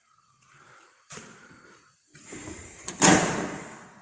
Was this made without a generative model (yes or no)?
no